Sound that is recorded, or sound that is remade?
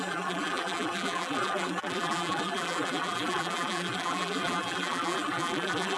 remade